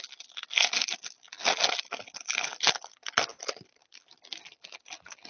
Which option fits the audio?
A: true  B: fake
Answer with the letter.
A